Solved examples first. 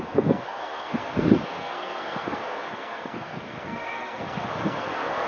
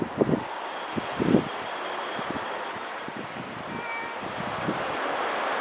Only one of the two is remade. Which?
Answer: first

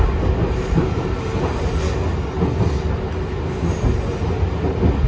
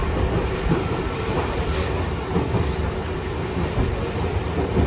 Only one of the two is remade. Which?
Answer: second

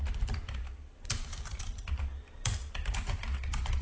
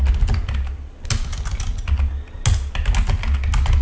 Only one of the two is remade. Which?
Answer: first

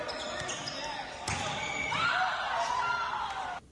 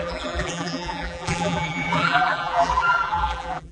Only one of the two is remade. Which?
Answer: second